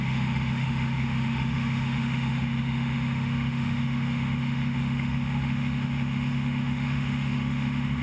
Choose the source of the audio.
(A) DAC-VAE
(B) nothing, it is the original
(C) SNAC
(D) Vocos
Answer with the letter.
A